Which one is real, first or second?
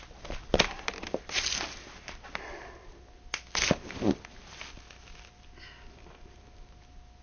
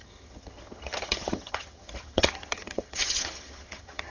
first